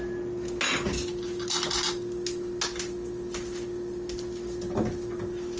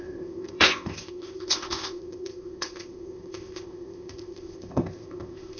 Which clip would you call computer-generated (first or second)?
second